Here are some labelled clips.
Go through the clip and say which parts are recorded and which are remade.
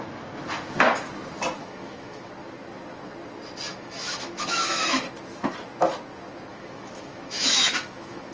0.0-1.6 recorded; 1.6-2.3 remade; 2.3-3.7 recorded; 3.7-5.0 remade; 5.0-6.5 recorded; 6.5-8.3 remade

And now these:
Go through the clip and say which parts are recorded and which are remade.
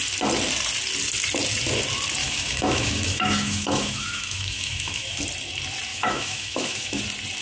0.0-2.2 recorded; 2.2-5.2 remade; 5.2-5.9 recorded; 5.9-7.0 remade; 7.0-7.4 recorded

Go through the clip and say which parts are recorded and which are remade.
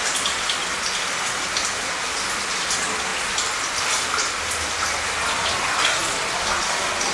0.0-7.1 recorded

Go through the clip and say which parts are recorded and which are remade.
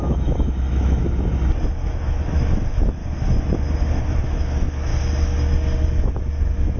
0.0-1.0 remade; 1.0-1.7 recorded; 1.7-3.0 remade; 3.0-4.0 recorded; 4.0-4.9 remade; 4.9-6.2 recorded; 6.2-6.8 remade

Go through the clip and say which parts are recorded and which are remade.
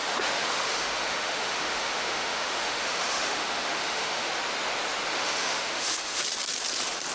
0.0-4.3 remade; 4.3-5.1 recorded; 5.1-6.2 remade; 6.2-7.1 recorded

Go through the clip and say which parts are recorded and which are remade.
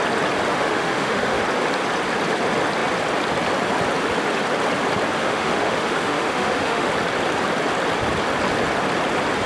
0.0-0.5 recorded; 0.5-1.4 remade; 1.4-5.2 recorded; 5.2-6.9 remade; 6.9-9.5 recorded